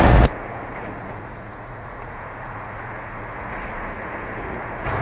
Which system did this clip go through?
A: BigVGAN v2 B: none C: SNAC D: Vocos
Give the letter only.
D